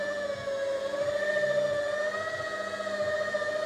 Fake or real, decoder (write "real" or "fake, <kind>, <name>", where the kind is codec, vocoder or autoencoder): real